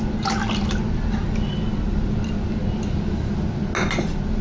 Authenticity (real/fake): real